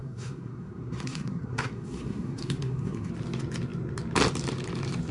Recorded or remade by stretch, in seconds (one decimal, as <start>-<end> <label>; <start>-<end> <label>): 0.0-3.1 remade; 3.1-5.1 recorded